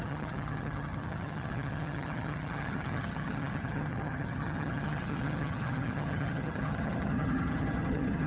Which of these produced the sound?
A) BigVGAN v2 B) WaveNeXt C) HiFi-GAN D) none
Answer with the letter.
C